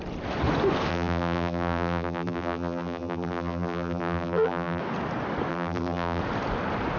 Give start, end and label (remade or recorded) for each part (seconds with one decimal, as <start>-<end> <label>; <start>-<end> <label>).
0.0-0.9 recorded; 0.9-4.8 remade; 4.8-5.5 recorded; 5.5-6.2 remade; 6.2-7.0 recorded